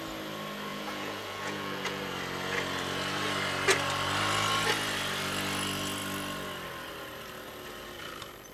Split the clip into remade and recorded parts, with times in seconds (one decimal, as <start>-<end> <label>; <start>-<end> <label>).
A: 0.0-0.7 recorded; 0.7-2.0 remade; 2.0-8.5 recorded